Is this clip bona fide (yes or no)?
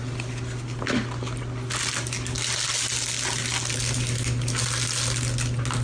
yes